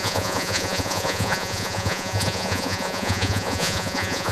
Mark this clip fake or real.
fake